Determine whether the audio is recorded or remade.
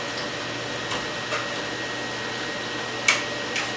recorded